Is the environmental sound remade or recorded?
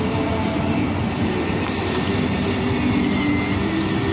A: remade